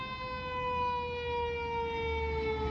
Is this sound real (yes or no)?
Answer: yes